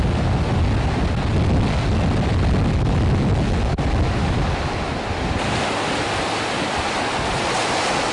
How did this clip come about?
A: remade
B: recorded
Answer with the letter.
B